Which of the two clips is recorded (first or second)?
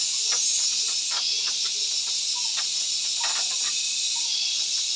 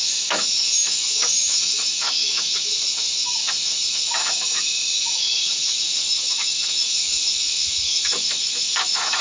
first